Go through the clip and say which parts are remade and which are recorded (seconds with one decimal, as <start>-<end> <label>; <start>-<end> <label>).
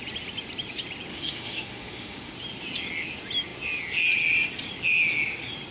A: 0.0-1.1 recorded; 1.1-2.3 remade; 2.3-5.7 recorded